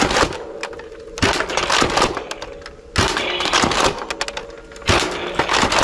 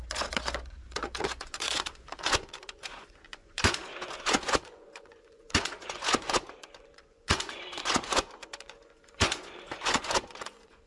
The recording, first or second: first